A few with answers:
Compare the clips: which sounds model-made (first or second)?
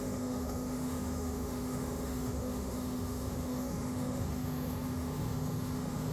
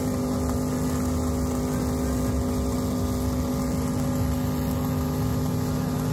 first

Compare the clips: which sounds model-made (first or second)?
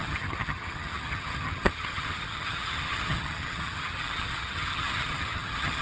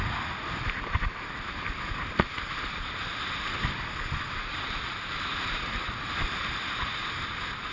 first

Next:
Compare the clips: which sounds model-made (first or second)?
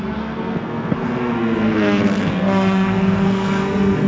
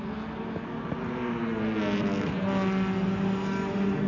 first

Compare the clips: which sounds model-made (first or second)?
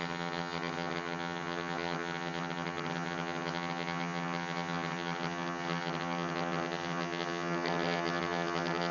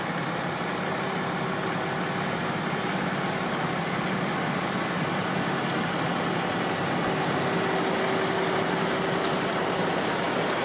first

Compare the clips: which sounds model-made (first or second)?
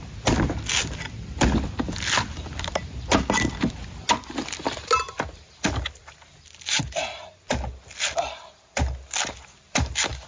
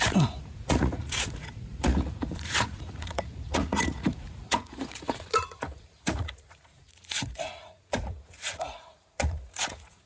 second